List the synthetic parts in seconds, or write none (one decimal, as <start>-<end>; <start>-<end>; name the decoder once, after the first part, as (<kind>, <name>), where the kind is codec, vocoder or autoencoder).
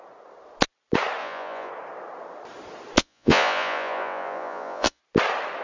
1.2-1.7 (vocoder, Vocos); 3.0-5.0